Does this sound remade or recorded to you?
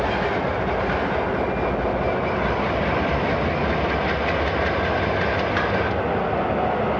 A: recorded